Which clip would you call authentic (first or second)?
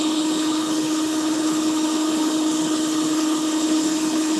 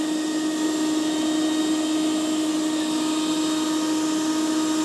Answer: second